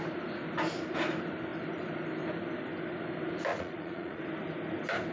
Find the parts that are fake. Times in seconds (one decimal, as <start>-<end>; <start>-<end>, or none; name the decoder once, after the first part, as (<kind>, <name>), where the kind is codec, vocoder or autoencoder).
3.5-4.2 (vocoder, Vocos)